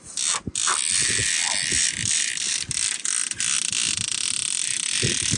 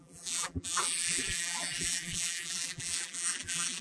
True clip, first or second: first